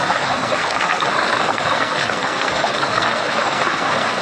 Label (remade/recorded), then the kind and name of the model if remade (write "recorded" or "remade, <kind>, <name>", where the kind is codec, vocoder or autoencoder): remade, codec, SNAC